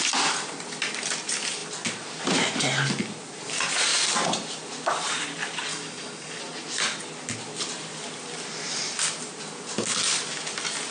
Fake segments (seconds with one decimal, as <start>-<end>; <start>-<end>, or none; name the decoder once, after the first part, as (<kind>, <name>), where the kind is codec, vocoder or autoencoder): 5.7-6.4 (codec, DAC)